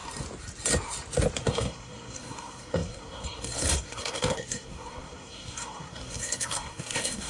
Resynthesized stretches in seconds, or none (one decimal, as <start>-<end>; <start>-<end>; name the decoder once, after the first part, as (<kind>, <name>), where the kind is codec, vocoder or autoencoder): 1.4-7.3 (codec, SNAC)